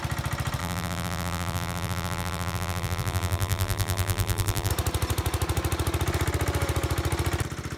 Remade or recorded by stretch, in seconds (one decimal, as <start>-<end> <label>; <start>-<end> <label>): 0.0-0.6 recorded; 0.6-4.7 remade; 4.7-7.8 recorded